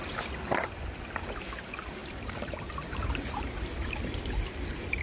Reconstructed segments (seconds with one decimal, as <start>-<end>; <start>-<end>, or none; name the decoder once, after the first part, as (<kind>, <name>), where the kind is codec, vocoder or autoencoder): 2.0-5.0 (vocoder, BigVGAN v2)